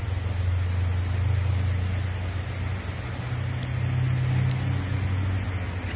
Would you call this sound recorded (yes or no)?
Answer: yes